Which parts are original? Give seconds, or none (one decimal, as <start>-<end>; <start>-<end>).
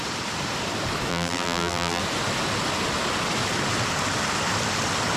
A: 0.0-1.1; 2.0-5.2